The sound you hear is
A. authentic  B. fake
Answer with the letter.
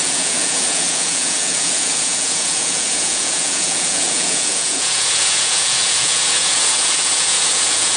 B